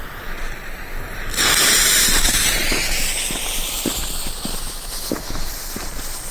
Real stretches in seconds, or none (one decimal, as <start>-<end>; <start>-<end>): 0.0-4.5; 5.5-6.3